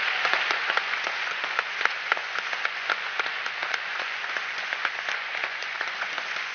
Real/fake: fake